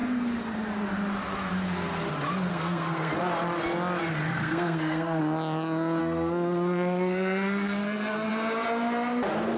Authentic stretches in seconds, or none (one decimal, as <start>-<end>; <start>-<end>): 0.0-2.5; 3.1-4.2; 5.2-6.0; 8.3-9.6